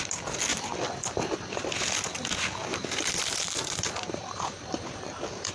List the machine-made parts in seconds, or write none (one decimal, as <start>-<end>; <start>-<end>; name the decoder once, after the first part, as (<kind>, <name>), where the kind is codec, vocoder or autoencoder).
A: 0.5-1.6 (vocoder, BigVGAN v2); 2.7-5.5

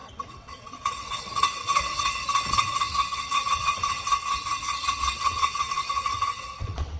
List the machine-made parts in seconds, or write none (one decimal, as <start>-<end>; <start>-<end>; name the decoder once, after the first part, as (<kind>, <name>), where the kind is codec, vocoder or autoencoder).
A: 0.0-7.0 (vocoder, WaveNeXt)

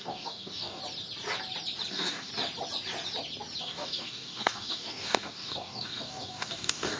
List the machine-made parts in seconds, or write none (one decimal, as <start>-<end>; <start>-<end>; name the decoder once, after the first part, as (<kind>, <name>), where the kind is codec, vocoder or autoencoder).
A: 0.0-0.8 (codec, DAC); 1.9-2.3; 3.6-7.0

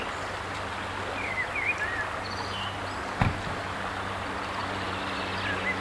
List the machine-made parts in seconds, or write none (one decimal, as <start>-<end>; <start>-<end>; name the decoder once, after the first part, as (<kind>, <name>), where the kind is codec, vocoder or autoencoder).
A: none

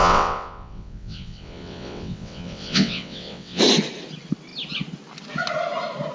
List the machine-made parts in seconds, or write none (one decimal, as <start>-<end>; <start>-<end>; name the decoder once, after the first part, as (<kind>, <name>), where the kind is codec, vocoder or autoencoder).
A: 0.0-3.6 (vocoder, WaveNeXt)

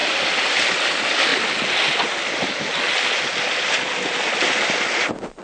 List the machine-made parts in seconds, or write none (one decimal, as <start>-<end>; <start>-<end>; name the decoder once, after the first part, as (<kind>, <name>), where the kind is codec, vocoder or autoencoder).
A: none

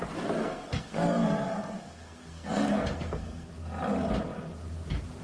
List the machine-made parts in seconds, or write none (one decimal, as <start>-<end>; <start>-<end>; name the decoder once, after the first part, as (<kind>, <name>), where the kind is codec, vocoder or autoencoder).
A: 0.4-3.5 (codec, SNAC)

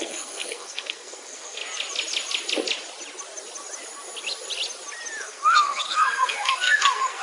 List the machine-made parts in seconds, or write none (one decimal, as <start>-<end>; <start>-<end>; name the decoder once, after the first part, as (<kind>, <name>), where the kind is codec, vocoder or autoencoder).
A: 0.0-1.6 (codec, SNAC); 5.2-7.2